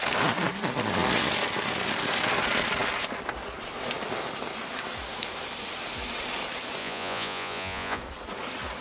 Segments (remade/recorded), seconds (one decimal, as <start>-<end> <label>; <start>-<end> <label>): 0.0-6.8 recorded; 6.8-8.0 remade; 8.0-8.8 recorded